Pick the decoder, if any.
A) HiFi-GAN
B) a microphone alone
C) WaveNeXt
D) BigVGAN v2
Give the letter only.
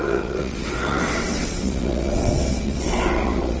C